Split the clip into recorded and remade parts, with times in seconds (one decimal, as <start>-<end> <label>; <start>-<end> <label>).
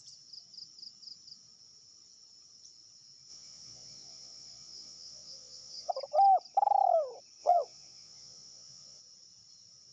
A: 0.0-3.3 recorded; 3.3-5.9 remade; 5.9-7.4 recorded; 7.4-9.0 remade; 9.0-9.9 recorded